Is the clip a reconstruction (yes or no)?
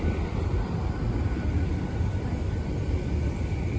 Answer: yes